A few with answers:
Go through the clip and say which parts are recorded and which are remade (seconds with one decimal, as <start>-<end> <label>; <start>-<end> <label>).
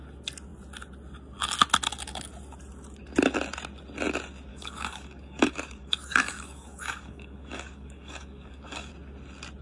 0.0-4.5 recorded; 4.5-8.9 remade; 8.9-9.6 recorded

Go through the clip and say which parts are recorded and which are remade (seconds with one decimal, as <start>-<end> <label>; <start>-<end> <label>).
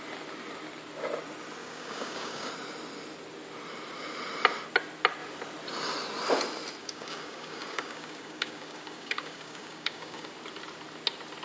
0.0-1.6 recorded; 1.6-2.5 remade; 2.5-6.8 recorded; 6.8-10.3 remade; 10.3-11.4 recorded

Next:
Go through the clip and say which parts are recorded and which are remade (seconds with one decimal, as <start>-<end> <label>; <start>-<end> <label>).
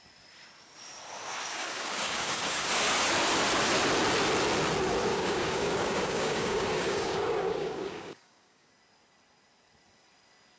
0.0-1.5 recorded; 1.5-2.7 remade; 2.7-5.1 recorded; 5.1-8.7 remade; 8.7-10.6 recorded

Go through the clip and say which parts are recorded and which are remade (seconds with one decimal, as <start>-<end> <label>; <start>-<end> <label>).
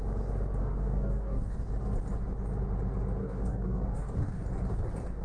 0.0-0.6 recorded; 0.6-1.6 remade; 1.6-3.2 recorded; 3.2-4.4 remade; 4.4-5.2 recorded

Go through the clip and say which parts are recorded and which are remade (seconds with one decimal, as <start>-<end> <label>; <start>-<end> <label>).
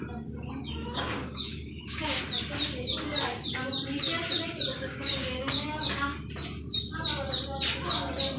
0.0-0.6 recorded; 0.6-2.2 remade; 2.2-4.7 recorded; 4.7-6.0 remade; 6.0-8.4 recorded